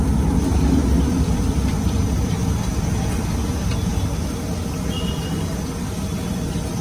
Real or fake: real